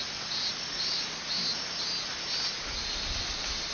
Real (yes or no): yes